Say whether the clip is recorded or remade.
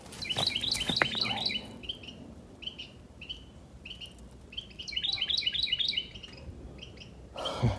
recorded